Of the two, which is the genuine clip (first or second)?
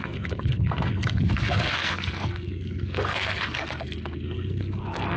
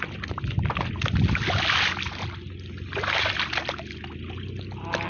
second